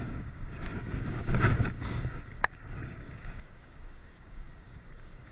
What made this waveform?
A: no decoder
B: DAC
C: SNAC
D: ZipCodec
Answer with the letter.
B